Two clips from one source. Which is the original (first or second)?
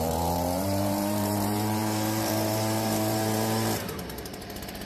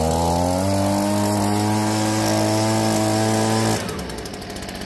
second